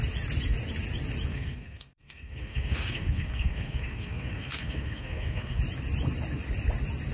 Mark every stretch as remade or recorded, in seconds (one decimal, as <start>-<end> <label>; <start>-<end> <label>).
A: 0.0-1.3 recorded; 1.3-5.6 remade; 5.6-7.1 recorded